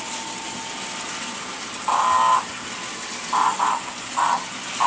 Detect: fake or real real